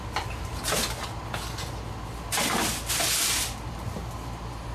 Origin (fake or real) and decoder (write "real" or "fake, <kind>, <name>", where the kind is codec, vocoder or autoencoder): real